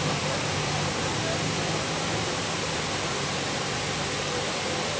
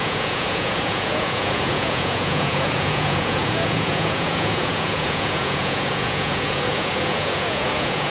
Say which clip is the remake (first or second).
second